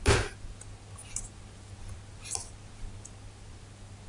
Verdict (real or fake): real